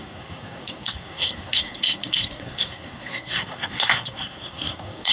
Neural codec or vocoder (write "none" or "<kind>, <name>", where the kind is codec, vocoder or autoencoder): codec, SNAC